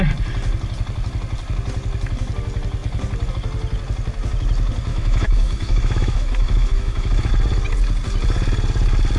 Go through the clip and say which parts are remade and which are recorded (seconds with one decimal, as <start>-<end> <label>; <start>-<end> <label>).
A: 0.0-4.9 recorded; 4.9-7.3 remade; 7.3-9.2 recorded